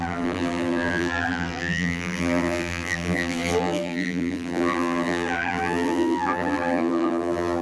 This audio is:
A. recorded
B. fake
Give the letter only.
B